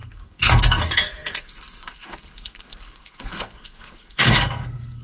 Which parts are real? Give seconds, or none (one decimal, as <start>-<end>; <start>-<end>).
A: none